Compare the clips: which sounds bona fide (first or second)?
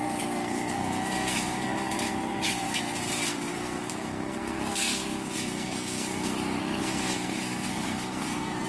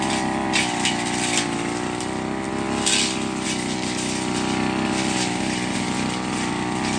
second